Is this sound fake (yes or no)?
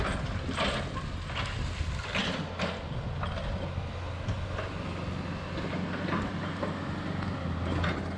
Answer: no